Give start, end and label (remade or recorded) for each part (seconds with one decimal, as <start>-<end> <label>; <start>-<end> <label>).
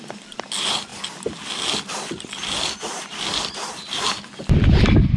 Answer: 0.0-5.2 recorded